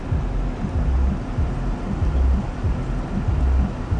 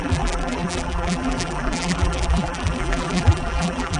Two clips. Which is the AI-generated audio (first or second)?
second